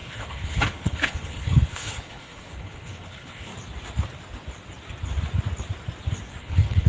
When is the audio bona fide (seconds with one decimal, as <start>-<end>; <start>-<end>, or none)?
3.5-6.4